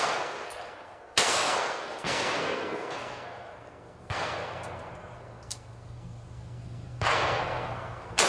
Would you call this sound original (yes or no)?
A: no